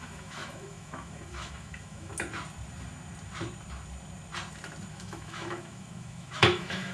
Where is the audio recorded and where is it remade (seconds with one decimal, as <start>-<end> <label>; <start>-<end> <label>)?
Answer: 0.0-2.1 remade; 2.1-4.9 recorded; 4.9-6.9 remade